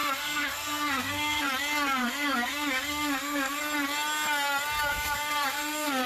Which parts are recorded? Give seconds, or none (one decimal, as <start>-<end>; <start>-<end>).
1.4-2.0; 3.6-4.9